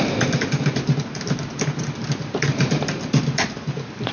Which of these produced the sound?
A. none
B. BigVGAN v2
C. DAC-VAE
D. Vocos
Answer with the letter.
A